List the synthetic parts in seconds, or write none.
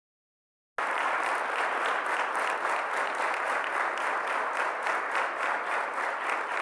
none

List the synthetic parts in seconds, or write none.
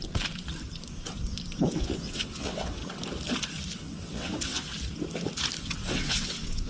1.7-2.8 (vocoder, WaveNeXt); 3.8-4.7; 5.6-6.7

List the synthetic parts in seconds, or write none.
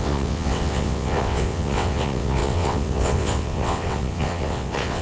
0.0-5.0 (vocoder, WaveNeXt)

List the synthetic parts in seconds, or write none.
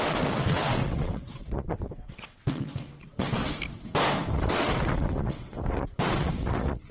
0.0-3.4 (vocoder, WaveNeXt); 4.3-6.9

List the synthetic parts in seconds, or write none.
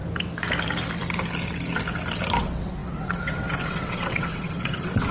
2.4-5.1 (vocoder, WaveNeXt)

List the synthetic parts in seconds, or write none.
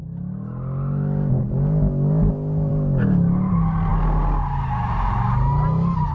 none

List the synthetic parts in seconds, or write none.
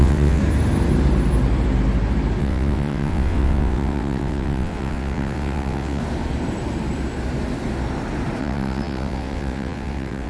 0.0-0.4 (vocoder, WaveNeXt); 2.4-6.0; 8.4-10.3